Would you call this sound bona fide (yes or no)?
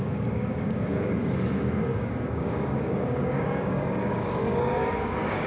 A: no